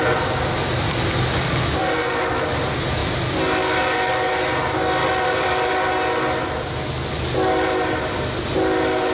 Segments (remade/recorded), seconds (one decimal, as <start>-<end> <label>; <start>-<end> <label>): 0.0-5.0 recorded; 5.0-5.7 remade; 5.7-9.1 recorded